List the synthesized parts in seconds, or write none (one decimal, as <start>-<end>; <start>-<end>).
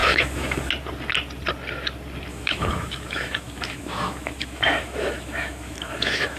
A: 0.0-0.7; 2.3-6.4